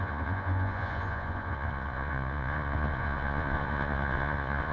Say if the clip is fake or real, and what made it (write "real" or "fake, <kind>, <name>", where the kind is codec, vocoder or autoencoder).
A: fake, vocoder, Vocos